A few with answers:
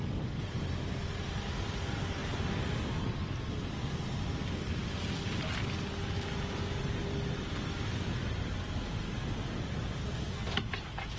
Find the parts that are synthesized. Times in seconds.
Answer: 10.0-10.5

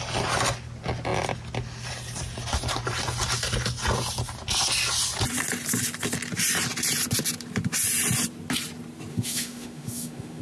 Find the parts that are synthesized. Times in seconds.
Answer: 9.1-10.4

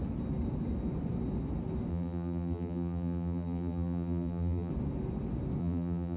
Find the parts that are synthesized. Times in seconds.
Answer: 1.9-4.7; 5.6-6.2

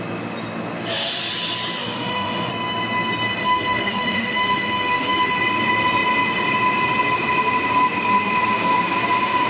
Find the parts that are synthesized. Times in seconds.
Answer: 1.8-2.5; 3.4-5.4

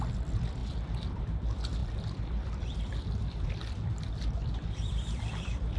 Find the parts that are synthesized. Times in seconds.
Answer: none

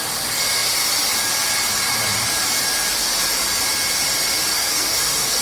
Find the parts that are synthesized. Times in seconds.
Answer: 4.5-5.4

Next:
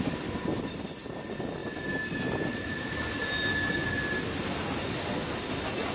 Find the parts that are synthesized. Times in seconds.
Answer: none